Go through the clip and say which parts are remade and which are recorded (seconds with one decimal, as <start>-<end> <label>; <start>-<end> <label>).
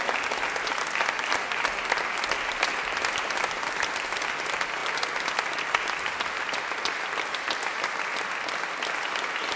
0.0-9.6 recorded